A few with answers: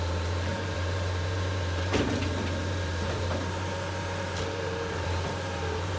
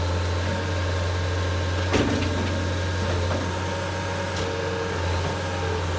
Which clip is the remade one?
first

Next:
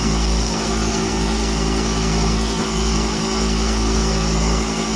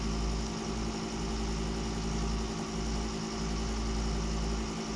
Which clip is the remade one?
first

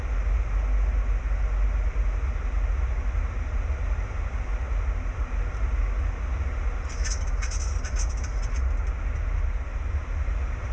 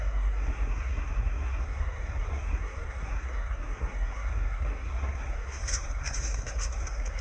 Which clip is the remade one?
second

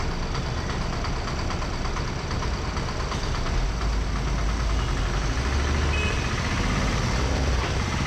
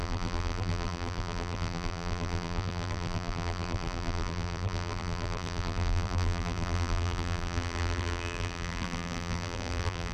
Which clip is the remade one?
second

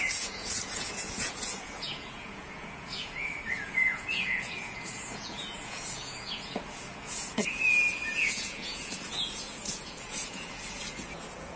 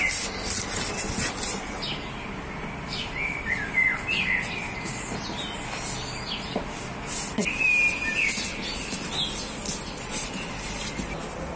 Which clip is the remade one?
first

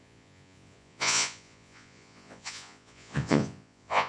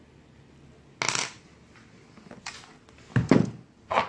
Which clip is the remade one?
first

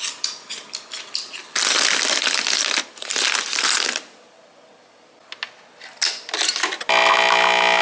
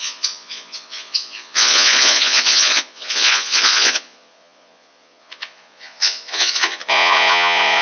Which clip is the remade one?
second